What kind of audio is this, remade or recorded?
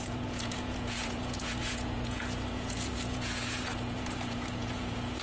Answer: remade